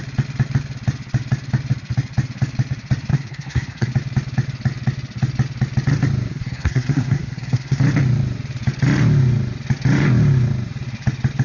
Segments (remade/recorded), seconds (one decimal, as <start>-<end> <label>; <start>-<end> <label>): 0.0-3.1 recorded; 3.1-3.9 remade; 3.9-6.3 recorded; 6.3-7.8 remade; 7.8-11.4 recorded